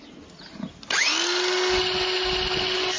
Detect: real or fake real